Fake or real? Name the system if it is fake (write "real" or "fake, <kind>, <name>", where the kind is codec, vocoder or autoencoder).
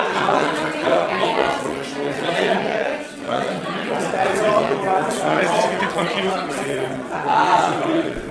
fake, vocoder, WaveNeXt